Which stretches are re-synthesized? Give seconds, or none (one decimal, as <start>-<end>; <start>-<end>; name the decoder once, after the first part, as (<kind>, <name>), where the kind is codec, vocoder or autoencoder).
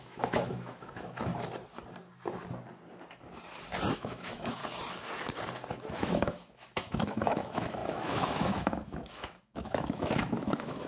0.0-1.3 (autoencoder, DAC-VAE); 3.9-4.6; 5.9-10.9